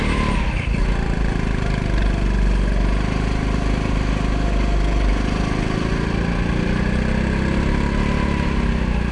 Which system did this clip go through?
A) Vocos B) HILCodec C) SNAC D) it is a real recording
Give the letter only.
D